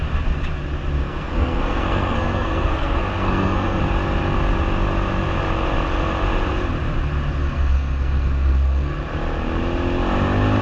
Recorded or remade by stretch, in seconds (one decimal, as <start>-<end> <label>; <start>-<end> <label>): 0.0-1.0 recorded; 1.0-3.8 remade; 3.8-7.4 recorded; 7.4-9.0 remade; 9.0-10.6 recorded